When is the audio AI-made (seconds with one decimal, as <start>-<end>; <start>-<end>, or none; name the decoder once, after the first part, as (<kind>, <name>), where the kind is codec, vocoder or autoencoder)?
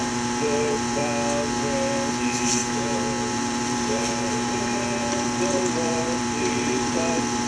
0.0-1.0 (vocoder, BigVGAN v2); 2.1-2.6; 3.3-7.5